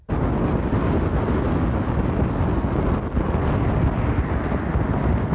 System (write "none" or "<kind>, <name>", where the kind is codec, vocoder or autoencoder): none